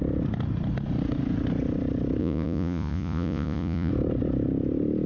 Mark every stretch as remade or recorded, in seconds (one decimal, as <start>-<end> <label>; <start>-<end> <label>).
0.0-2.2 recorded; 2.2-3.9 remade; 3.9-5.1 recorded